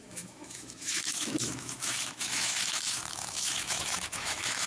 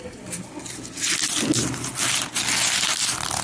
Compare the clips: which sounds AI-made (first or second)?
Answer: first